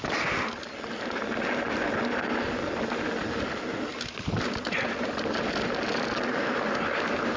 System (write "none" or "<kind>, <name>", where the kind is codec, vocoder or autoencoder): none